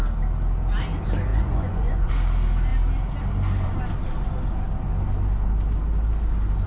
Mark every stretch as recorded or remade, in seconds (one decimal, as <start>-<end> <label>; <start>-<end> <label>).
0.0-1.3 recorded; 1.3-2.1 remade; 2.1-6.7 recorded

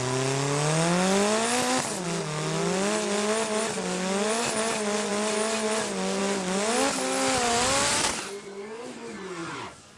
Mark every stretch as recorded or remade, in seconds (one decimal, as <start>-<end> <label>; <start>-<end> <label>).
0.0-9.4 recorded; 9.4-10.0 remade

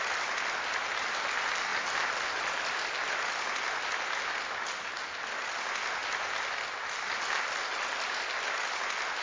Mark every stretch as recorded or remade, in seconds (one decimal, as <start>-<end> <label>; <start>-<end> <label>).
0.0-9.2 recorded

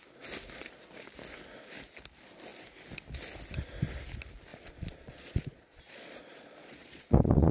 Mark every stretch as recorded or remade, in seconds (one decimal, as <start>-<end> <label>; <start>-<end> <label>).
0.0-4.5 recorded; 4.5-7.5 remade

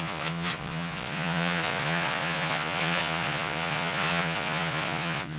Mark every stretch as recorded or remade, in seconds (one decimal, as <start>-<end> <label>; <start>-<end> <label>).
0.0-5.4 remade

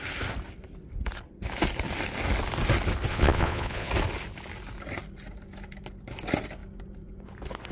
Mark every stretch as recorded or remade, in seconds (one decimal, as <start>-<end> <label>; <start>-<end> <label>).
0.0-3.1 recorded; 3.1-3.9 remade; 3.9-7.7 recorded